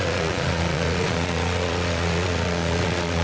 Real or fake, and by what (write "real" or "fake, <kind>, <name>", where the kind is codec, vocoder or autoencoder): fake, vocoder, Vocos